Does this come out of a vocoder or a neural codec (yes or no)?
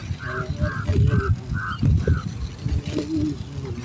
no